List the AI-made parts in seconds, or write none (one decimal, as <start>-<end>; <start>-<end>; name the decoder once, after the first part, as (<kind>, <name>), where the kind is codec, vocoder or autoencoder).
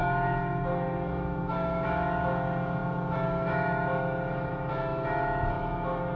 0.0-6.2 (autoencoder, DAC-VAE)